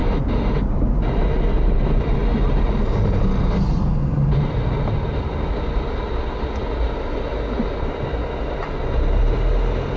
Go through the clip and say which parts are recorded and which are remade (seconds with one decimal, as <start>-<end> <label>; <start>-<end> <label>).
0.0-10.0 recorded